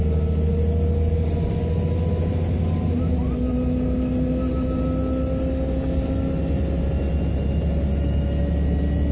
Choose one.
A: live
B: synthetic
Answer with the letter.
A